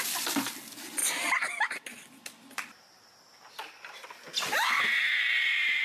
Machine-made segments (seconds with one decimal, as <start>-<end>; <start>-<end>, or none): 0.0-1.0; 4.5-5.8